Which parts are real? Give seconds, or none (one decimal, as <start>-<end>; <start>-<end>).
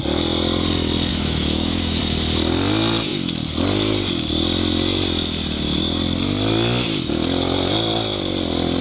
0.0-1.1; 2.0-8.8